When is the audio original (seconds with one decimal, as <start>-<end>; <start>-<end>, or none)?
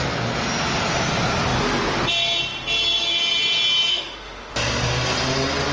0.0-3.9; 4.5-5.7